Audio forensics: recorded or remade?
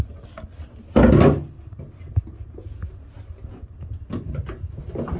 recorded